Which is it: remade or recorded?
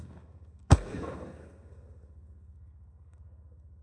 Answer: remade